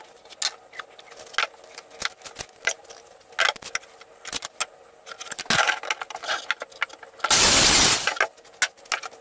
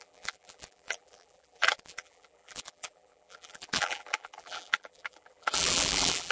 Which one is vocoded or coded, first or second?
second